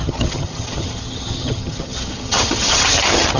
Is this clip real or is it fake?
fake